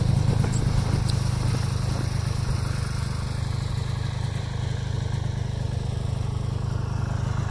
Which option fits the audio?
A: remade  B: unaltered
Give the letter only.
B